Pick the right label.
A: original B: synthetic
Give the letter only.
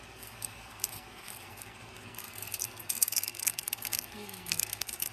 B